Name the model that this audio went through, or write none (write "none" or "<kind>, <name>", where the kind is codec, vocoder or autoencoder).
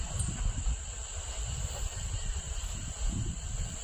none